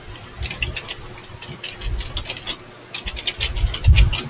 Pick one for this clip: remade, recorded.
recorded